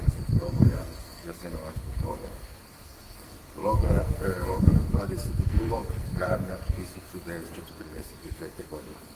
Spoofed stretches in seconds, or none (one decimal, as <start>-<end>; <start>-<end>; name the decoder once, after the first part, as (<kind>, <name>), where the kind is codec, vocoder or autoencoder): 0.0-7.1 (codec, SNAC); 7.7-9.1